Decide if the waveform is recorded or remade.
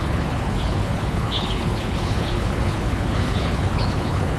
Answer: remade